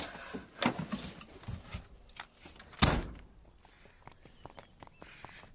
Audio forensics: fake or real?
real